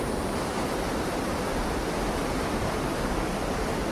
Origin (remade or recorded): recorded